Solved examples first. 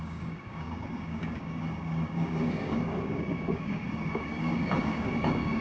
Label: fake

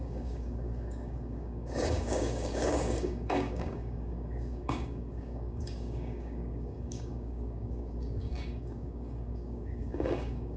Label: fake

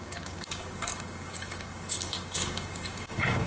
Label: fake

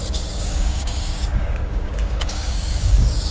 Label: fake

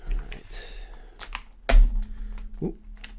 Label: real